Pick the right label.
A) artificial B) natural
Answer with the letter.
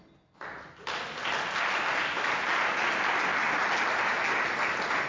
B